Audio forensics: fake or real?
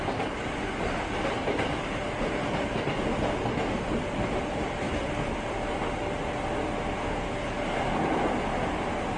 real